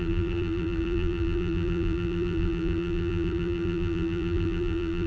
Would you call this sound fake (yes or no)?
yes